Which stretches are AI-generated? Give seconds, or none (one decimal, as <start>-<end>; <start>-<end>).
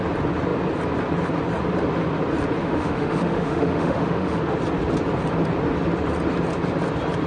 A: 2.6-4.4